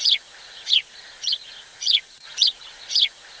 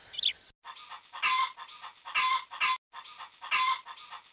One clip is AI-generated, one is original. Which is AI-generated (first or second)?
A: first